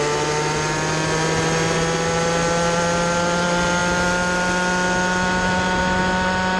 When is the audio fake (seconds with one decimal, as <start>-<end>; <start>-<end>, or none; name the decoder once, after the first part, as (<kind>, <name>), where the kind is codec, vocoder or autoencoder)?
none